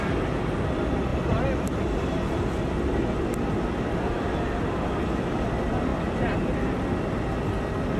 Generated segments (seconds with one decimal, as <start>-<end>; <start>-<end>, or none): none